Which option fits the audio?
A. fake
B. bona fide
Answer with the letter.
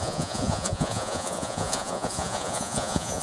A